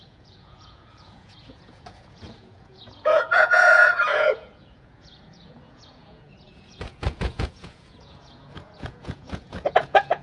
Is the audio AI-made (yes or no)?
yes